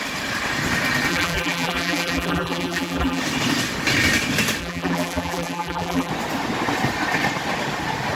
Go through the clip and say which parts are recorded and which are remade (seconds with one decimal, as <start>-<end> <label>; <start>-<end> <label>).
0.0-1.1 recorded; 1.1-3.2 remade; 3.2-4.6 recorded; 4.6-6.1 remade; 6.1-8.1 recorded

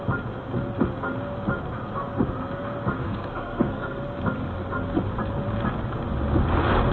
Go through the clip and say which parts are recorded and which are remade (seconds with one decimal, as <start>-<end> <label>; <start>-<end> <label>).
0.0-3.0 recorded; 3.0-4.0 remade; 4.0-6.9 recorded